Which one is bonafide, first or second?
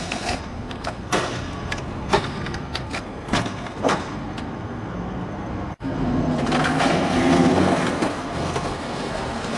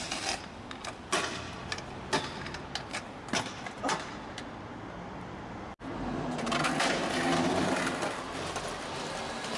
second